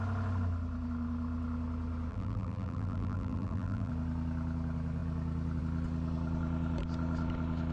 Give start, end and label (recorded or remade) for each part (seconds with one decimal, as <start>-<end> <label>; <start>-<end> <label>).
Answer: 0.0-2.1 recorded; 2.1-3.9 remade; 3.9-7.7 recorded